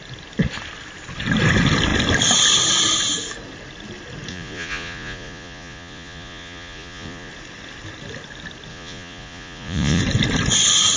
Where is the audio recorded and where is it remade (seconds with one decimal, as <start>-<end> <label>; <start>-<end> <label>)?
0.0-4.3 recorded; 4.3-7.3 remade; 7.3-8.7 recorded; 8.7-10.0 remade; 10.0-11.0 recorded